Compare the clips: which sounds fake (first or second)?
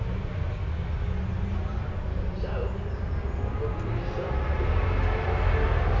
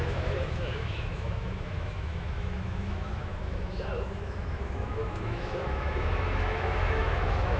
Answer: second